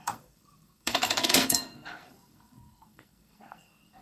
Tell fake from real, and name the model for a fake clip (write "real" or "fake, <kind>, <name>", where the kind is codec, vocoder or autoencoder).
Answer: fake, codec, SNAC